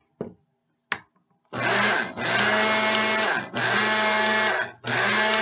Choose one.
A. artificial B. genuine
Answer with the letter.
B